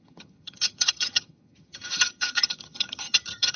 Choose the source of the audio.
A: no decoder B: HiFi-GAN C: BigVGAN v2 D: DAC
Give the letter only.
B